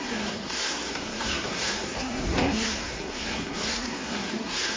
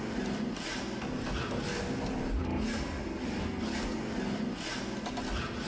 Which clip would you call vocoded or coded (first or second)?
first